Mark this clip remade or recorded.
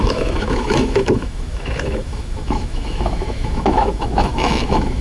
remade